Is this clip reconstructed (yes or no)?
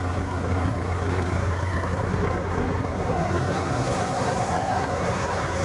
yes